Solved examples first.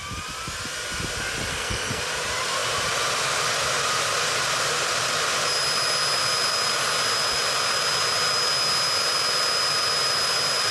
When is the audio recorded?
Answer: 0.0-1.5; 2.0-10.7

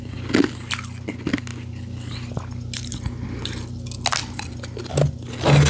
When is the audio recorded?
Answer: 0.0-5.7

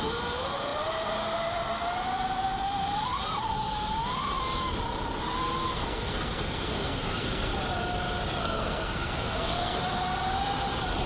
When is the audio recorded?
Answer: 0.0-5.6; 7.5-8.4; 9.8-11.1

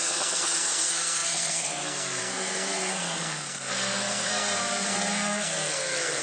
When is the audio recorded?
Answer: none